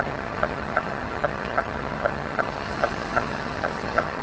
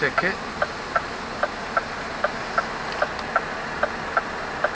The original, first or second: second